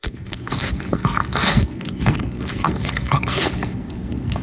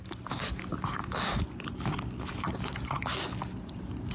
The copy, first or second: first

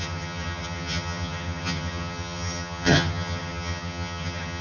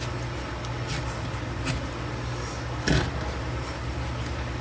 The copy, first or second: first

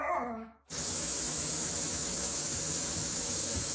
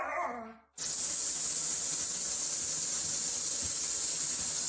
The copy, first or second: first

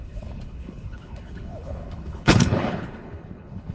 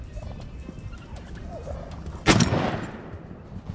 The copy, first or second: first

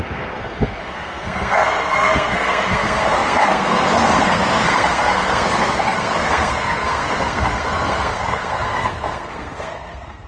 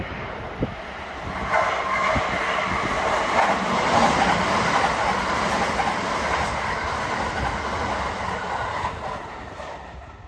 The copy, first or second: first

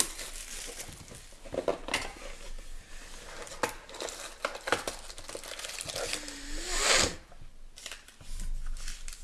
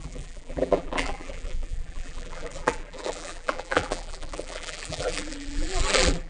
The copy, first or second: second